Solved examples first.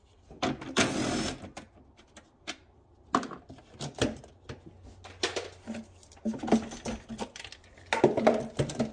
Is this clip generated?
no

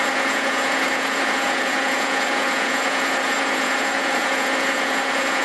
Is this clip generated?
yes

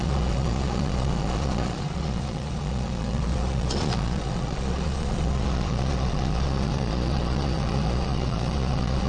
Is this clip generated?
yes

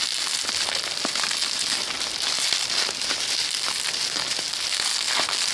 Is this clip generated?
no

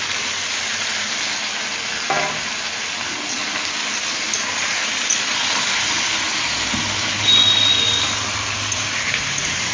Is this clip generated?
no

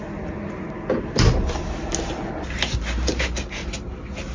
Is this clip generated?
no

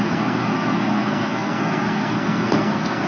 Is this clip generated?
yes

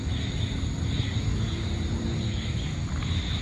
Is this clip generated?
no